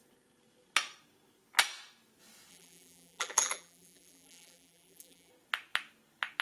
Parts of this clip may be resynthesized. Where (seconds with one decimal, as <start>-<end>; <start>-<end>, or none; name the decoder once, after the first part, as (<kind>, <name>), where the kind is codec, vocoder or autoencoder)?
2.5-5.3 (vocoder, BigVGAN v2)